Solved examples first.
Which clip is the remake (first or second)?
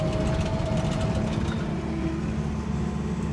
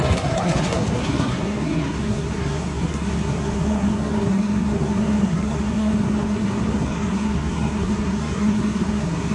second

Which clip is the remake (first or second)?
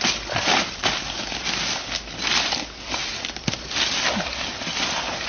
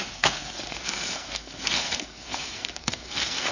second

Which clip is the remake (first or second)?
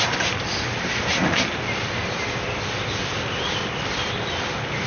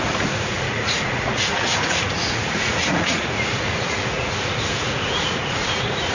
second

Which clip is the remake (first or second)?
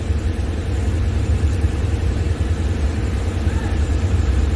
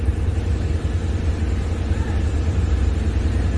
first